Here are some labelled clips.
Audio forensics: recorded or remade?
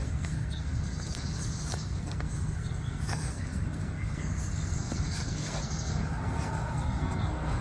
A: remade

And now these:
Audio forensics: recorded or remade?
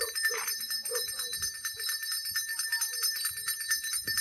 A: recorded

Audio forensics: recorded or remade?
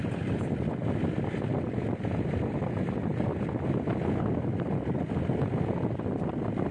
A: recorded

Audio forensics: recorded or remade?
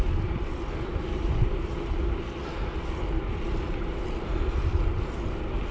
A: recorded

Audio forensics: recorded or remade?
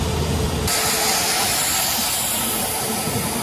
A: recorded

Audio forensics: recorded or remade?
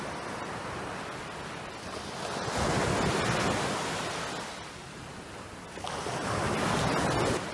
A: recorded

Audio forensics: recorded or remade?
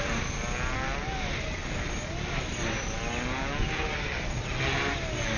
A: recorded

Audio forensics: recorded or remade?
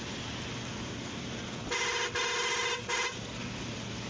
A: recorded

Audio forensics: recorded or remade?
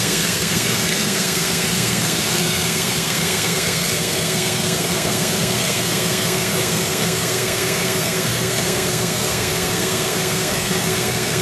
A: remade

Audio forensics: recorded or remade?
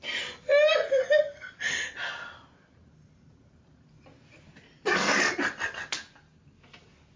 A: recorded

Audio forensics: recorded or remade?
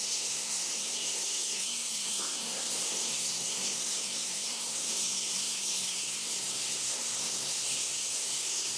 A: remade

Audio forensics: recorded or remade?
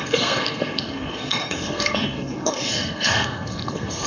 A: remade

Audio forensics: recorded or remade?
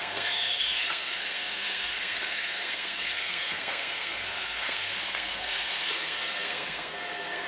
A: remade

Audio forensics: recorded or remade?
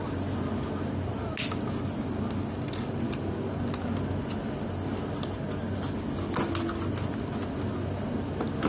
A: recorded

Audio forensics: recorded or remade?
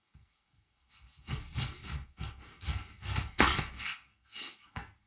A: remade